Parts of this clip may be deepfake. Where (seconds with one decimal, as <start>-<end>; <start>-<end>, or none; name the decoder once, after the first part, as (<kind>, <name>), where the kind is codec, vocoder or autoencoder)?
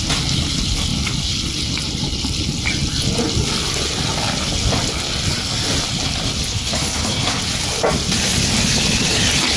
6.5-7.4 (codec, HILCodec)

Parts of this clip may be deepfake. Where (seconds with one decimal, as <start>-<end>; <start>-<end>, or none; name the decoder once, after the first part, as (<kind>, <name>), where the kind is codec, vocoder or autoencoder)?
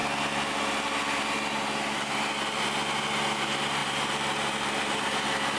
3.8-5.0 (vocoder, BigVGAN v2)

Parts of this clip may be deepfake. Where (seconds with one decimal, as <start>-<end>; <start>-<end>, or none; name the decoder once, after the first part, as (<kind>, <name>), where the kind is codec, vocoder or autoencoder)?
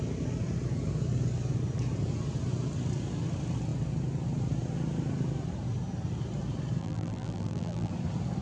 6.8-7.9 (vocoder, BigVGAN v2)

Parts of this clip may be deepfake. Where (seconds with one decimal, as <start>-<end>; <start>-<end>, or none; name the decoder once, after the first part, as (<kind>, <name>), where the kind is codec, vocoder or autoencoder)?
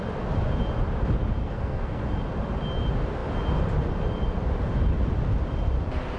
1.4-2.1 (codec, SNAC)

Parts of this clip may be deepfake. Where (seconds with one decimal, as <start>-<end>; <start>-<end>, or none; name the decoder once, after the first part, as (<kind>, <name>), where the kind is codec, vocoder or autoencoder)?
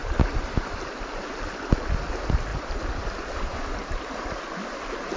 0.0-0.9 (vocoder, BigVGAN v2); 2.5-4.4